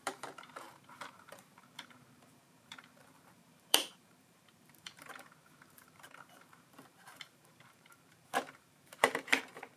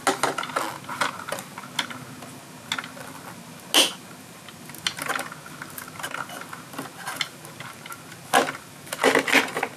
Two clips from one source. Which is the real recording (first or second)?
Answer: second